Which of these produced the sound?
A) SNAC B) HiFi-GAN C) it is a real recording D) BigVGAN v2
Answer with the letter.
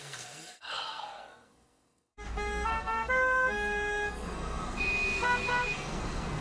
A